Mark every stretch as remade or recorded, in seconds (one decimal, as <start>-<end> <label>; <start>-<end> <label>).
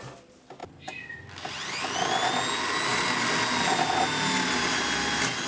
0.0-0.6 recorded; 0.6-2.1 remade; 2.1-5.5 recorded